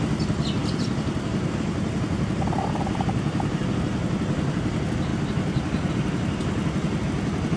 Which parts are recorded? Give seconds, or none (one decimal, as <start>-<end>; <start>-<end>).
0.0-7.6